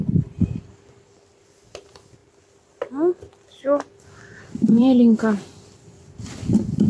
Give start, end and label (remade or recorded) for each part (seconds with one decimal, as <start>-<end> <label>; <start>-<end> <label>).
0.0-6.9 remade